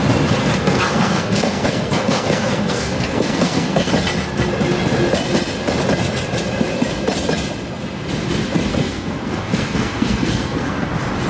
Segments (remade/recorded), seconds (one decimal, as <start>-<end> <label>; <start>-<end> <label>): 0.0-0.4 recorded; 0.4-3.9 remade; 3.9-8.7 recorded; 8.7-10.9 remade; 10.9-11.3 recorded